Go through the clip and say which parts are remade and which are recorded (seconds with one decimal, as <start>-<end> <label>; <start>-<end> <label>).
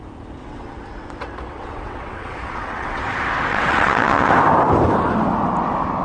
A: 0.0-0.4 recorded; 0.4-3.0 remade; 3.0-3.5 recorded; 3.5-4.3 remade; 4.3-6.0 recorded